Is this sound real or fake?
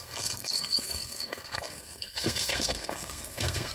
fake